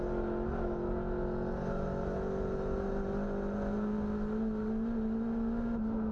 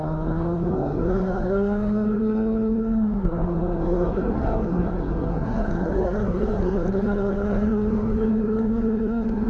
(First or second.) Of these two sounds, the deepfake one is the second